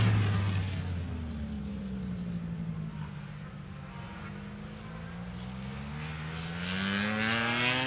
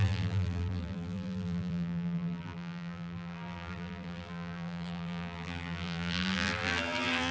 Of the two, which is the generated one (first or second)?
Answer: second